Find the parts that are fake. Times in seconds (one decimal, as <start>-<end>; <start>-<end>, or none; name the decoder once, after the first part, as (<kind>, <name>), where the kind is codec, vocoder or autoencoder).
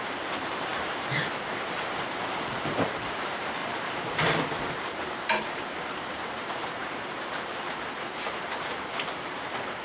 0.0-9.8 (vocoder, BigVGAN v2)